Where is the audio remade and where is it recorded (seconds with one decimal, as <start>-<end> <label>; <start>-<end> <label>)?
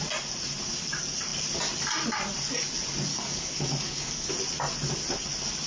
0.0-3.1 recorded; 3.1-4.3 remade; 4.3-5.7 recorded